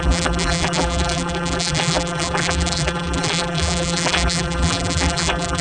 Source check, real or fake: fake